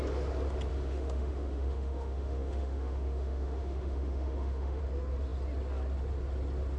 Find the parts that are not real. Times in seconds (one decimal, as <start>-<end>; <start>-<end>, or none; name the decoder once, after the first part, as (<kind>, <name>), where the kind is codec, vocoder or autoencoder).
0.7-4.8 (autoencoder, DAC-VAE)